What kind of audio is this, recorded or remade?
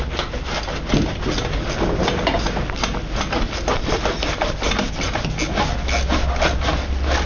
recorded